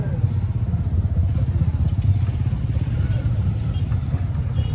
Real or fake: real